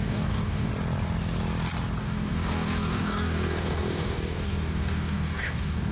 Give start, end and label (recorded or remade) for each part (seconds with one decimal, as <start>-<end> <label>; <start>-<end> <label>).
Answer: 0.0-0.7 remade; 0.7-2.0 recorded; 2.0-5.9 remade